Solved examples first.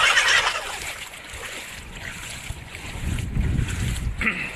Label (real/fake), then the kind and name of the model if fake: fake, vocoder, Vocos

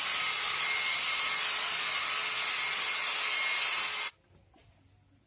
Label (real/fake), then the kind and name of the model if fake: real